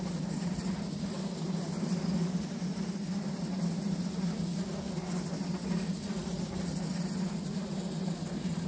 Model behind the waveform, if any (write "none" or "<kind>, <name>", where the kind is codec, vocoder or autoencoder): none